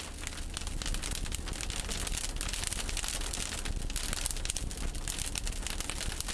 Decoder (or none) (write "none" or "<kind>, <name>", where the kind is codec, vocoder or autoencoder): none